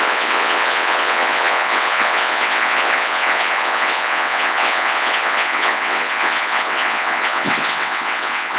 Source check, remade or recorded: remade